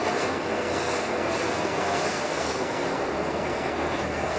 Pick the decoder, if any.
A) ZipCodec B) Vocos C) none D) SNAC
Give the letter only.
D